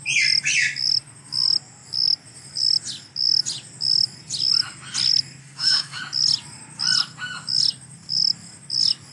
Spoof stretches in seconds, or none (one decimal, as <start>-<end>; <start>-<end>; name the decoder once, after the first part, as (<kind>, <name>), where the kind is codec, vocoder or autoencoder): 5.4-6.0 (autoencoder, DAC-VAE)